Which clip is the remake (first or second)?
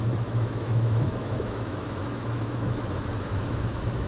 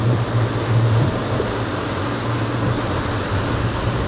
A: first